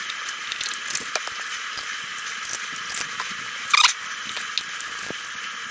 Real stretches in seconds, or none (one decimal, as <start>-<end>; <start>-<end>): 0.0-5.7